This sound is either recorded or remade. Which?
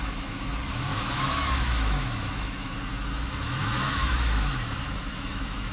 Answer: remade